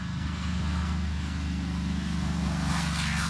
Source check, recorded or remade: remade